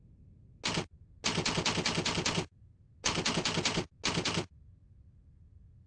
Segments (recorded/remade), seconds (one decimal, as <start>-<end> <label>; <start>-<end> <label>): 0.0-5.9 recorded